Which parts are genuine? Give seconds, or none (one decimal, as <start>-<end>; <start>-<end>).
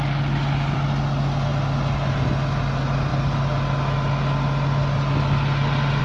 0.0-6.0